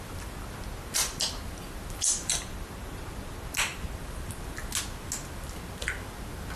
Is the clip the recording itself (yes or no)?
yes